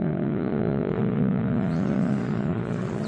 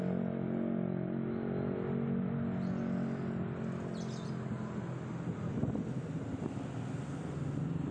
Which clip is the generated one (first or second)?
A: first